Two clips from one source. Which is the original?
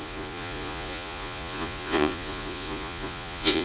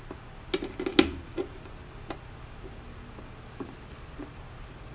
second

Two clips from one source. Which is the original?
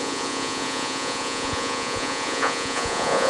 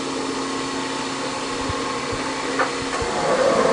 second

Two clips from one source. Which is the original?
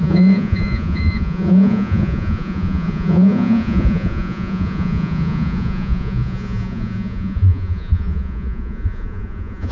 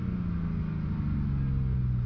second